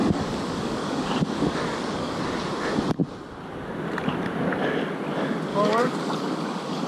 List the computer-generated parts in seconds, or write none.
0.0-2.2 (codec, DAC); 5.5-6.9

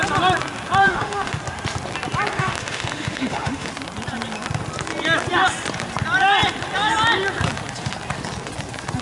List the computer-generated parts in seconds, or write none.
0.8-1.4 (autoencoder, DAC-VAE); 2.3-3.7

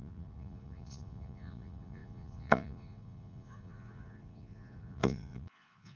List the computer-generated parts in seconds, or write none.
0.0-6.0 (vocoder, Vocos)

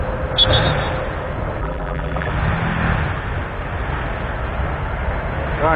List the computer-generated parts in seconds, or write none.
1.6-2.3 (vocoder, BigVGAN v2)

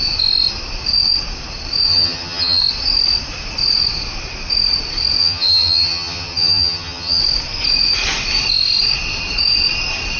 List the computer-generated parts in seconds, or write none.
1.9-2.6 (vocoder, HiFi-GAN); 5.2-7.2